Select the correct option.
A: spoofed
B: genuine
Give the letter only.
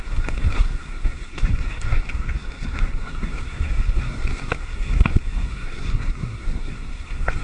A